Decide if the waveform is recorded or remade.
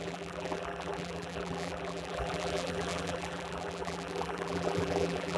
remade